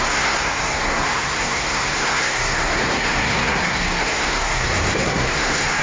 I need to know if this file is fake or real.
fake